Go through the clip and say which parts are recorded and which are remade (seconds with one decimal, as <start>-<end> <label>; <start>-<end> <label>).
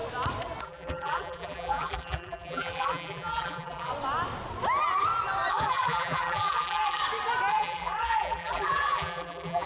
0.0-0.6 recorded; 0.6-3.9 remade; 3.9-5.5 recorded; 5.5-7.0 remade; 7.0-7.5 recorded; 7.5-9.7 remade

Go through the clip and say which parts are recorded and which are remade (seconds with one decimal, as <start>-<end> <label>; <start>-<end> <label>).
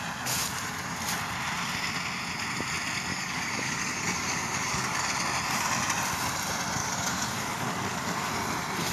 0.0-3.1 recorded; 3.1-5.1 remade; 5.1-6.8 recorded; 6.8-8.3 remade; 8.3-8.9 recorded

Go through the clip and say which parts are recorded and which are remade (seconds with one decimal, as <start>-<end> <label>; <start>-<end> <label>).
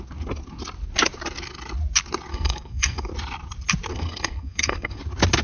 0.0-2.3 recorded; 2.3-3.1 remade; 3.1-3.9 recorded; 3.9-5.0 remade; 5.0-5.4 recorded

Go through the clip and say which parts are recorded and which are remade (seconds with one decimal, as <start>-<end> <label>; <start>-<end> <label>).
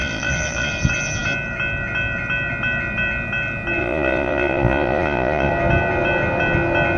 0.0-0.7 remade; 0.7-3.8 recorded; 3.8-5.5 remade; 5.5-7.0 recorded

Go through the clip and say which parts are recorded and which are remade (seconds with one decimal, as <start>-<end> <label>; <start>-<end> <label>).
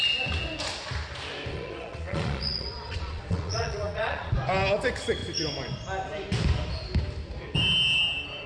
0.0-1.5 recorded; 1.5-4.3 remade; 4.3-8.5 recorded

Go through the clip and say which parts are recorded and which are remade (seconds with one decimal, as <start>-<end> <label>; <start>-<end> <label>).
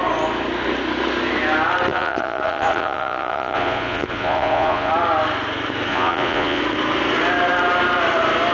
0.0-1.9 recorded; 1.9-4.9 remade; 4.9-5.9 recorded; 5.9-6.6 remade; 6.6-8.5 recorded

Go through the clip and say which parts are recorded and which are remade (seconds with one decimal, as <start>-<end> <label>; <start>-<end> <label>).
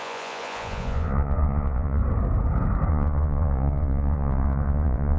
0.0-2.0 remade; 2.0-2.9 recorded; 2.9-5.2 remade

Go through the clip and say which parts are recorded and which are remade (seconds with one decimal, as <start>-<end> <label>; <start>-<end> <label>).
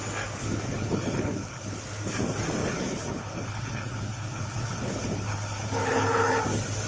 0.0-0.4 recorded; 0.4-1.8 remade; 1.8-2.6 recorded; 2.6-6.4 remade; 6.4-6.9 recorded